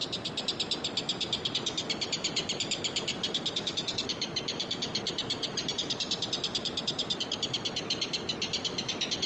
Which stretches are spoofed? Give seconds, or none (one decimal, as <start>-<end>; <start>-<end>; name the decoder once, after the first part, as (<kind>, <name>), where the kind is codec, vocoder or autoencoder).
2.4-6.8 (vocoder, BigVGAN v2)